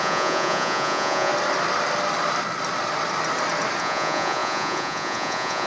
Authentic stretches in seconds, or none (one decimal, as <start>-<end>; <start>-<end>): 1.3-3.8